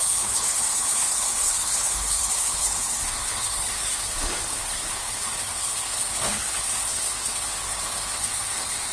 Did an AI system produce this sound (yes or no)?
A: yes